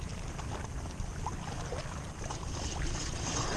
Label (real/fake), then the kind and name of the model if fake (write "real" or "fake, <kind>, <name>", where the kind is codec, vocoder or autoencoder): real